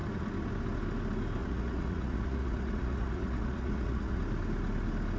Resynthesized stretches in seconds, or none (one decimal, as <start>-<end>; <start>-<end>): 1.4-4.2